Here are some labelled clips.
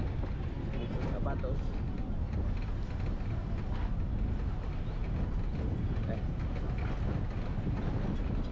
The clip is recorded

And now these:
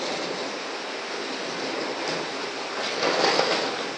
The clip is recorded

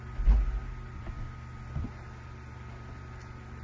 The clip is recorded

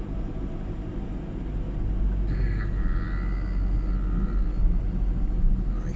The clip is recorded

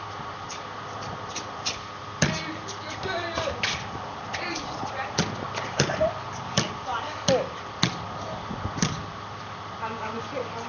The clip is recorded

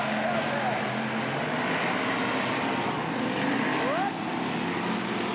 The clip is recorded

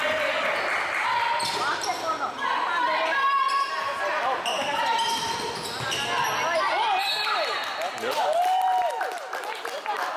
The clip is recorded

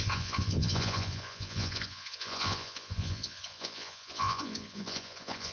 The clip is remade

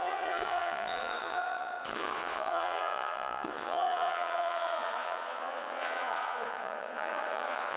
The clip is remade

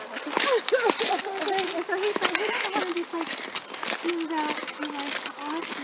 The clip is recorded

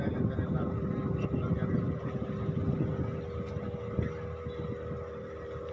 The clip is recorded